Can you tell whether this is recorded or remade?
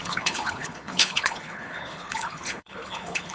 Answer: remade